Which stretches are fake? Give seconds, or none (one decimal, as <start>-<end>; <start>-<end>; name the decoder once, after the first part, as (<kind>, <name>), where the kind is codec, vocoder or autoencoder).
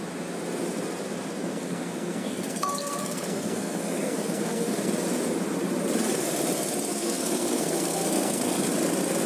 1.4-4.9 (codec, SNAC); 6.9-8.7